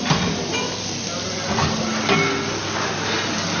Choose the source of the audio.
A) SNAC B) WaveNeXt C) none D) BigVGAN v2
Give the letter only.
C